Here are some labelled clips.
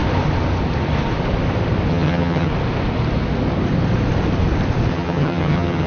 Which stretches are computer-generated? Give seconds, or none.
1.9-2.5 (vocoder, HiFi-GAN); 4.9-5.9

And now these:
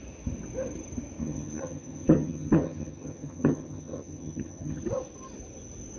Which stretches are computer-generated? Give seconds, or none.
1.2-4.8 (vocoder, HiFi-GAN)

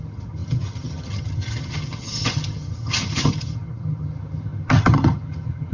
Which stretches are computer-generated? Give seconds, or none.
0.0-5.7 (vocoder, HiFi-GAN)

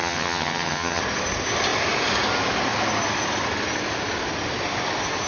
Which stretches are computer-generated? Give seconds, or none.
0.0-1.0 (vocoder, HiFi-GAN)

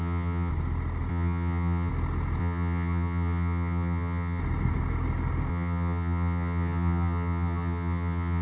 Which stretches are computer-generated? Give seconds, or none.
0.0-0.5 (vocoder, HiFi-GAN); 1.1-1.9; 2.4-4.4; 5.5-8.4

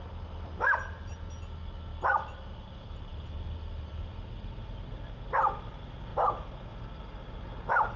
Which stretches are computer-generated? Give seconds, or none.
none